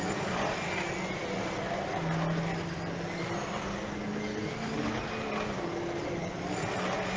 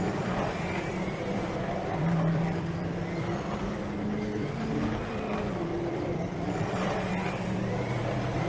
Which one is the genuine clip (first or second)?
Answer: first